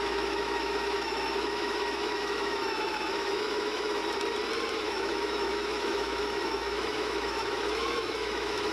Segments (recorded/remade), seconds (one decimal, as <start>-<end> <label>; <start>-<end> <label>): 0.0-4.0 remade; 4.0-4.7 recorded; 4.7-8.7 remade